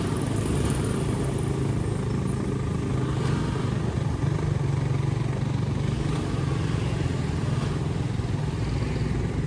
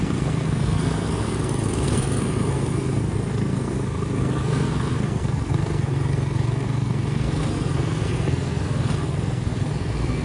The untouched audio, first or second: first